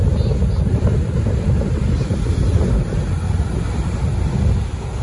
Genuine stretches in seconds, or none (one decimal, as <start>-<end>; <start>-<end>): 0.0-2.1; 3.5-5.0